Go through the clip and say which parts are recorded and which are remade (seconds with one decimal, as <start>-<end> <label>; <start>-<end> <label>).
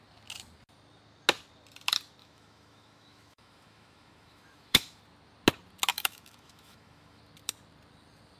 0.0-2.2 recorded; 2.2-5.0 remade; 5.0-5.9 recorded; 5.9-7.2 remade; 7.2-8.4 recorded